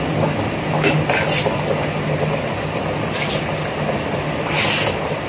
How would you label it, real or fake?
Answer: real